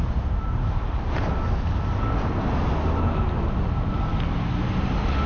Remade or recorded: recorded